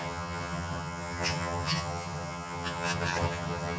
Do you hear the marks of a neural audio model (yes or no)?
yes